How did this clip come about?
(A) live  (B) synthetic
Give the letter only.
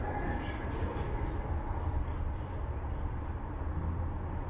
A